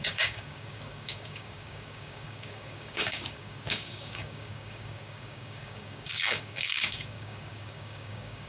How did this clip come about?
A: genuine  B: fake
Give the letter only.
B